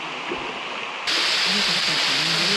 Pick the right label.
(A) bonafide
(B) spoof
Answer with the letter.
A